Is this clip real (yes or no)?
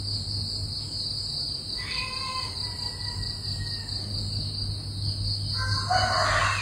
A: yes